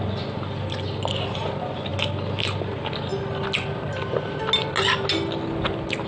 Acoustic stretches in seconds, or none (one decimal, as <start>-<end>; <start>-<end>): 0.0-6.1